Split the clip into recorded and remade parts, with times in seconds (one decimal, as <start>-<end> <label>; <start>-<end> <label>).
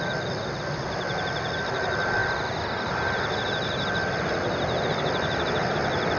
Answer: 0.0-6.2 recorded